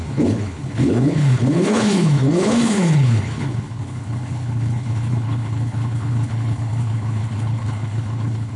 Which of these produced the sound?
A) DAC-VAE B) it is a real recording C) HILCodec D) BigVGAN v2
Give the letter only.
C